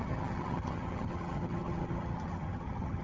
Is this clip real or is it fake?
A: fake